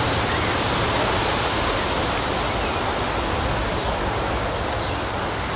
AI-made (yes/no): no